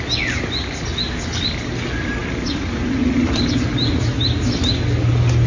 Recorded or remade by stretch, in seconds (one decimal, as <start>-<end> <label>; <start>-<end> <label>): 0.0-5.5 recorded